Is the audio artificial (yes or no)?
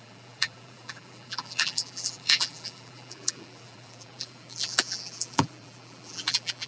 yes